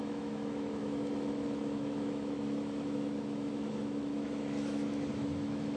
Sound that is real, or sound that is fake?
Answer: fake